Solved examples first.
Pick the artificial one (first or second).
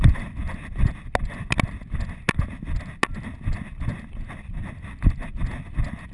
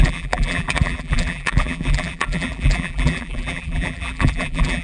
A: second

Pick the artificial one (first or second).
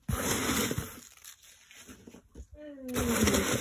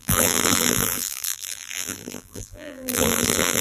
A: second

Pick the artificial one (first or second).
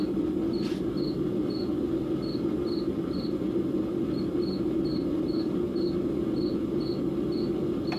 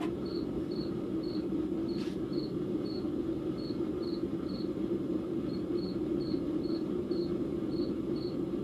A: second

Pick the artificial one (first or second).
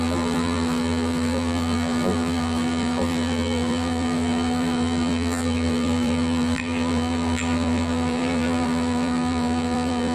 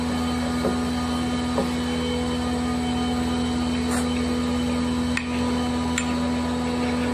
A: first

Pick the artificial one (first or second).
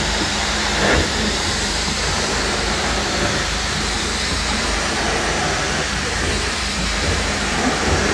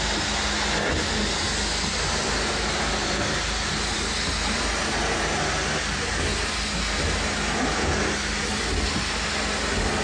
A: first